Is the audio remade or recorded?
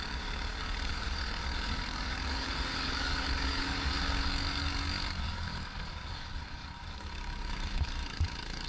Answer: remade